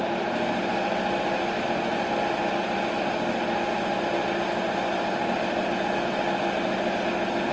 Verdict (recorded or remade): recorded